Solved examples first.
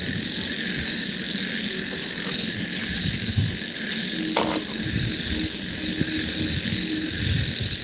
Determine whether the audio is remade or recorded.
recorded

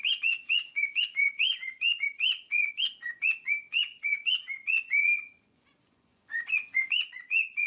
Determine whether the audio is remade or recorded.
remade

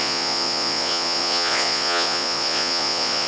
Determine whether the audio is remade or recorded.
remade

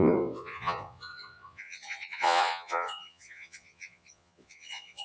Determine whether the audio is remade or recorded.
remade